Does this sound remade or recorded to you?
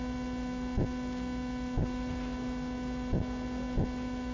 recorded